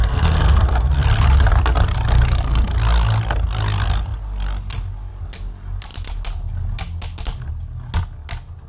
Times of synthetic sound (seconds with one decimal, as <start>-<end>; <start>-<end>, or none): 0.0-0.9